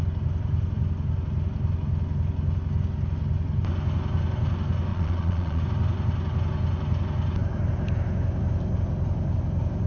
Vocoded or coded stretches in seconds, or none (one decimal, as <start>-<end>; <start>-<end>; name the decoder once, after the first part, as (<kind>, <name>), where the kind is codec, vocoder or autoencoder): 4.9-5.6 (vocoder, Vocos)